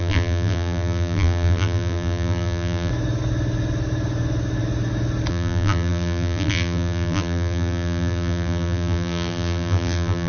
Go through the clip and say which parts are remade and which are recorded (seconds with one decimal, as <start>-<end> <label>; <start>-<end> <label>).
0.0-2.9 remade; 2.9-5.3 recorded; 5.3-10.3 remade